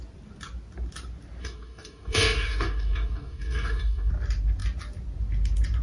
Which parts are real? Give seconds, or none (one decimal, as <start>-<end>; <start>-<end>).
0.0-1.4; 4.1-5.8